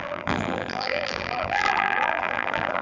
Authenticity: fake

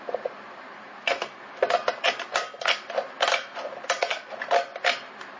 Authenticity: real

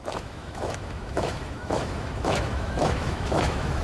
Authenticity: fake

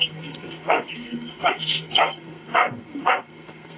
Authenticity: fake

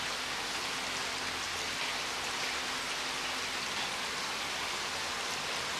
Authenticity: real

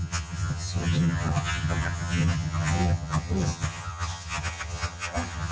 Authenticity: fake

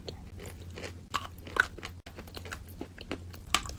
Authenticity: real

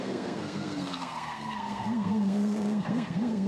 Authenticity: fake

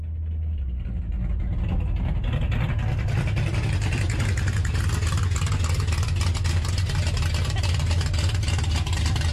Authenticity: real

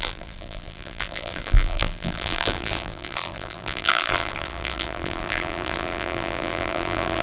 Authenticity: fake